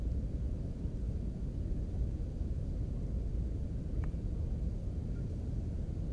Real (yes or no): yes